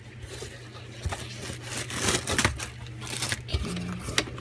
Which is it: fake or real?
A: real